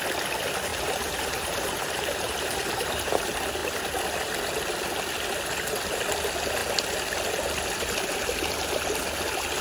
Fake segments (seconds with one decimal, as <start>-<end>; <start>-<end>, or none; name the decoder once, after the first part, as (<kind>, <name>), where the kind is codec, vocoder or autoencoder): 0.7-3.2 (vocoder, BigVGAN v2)